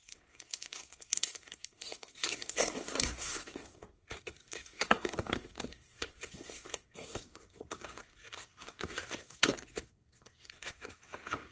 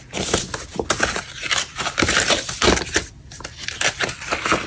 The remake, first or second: first